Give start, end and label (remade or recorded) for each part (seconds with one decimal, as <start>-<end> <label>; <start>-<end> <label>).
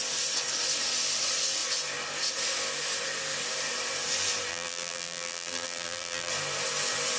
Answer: 0.0-4.5 recorded; 4.5-6.3 remade; 6.3-7.2 recorded